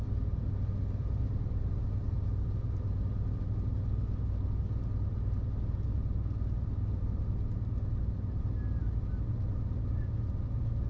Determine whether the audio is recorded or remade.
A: recorded